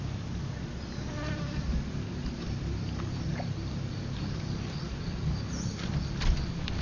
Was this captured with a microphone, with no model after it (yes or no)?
yes